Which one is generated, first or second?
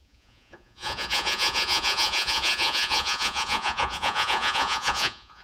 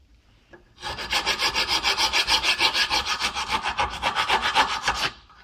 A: first